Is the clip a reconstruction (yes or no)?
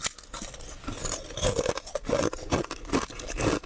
no